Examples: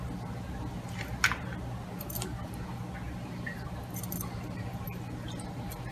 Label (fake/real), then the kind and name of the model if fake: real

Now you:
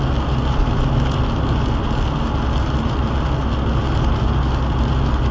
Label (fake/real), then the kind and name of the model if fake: real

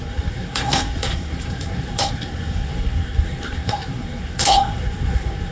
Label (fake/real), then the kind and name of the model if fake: fake, codec, SNAC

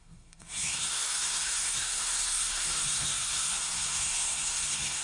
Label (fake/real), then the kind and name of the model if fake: fake, codec, SNAC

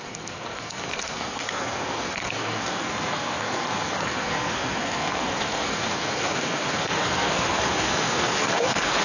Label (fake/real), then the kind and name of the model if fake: fake, codec, SNAC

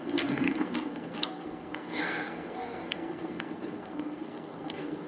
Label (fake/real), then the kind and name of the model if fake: fake, codec, SNAC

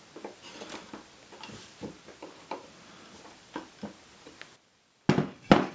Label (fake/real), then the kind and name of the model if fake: real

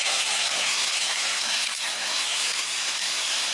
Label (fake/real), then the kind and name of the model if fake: fake, codec, SNAC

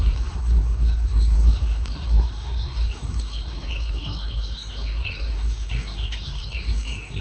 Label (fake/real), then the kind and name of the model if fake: fake, codec, SNAC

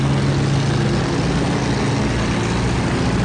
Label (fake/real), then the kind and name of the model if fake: real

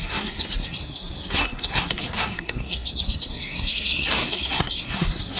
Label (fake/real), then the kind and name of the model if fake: fake, codec, SNAC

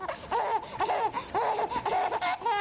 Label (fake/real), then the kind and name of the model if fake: real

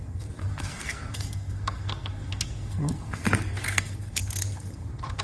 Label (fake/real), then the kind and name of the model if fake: fake, codec, SNAC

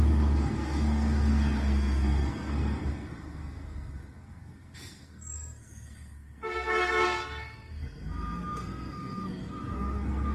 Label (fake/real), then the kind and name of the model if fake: fake, codec, SNAC